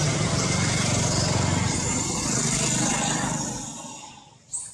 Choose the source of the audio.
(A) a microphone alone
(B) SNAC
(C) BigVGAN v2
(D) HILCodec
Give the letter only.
A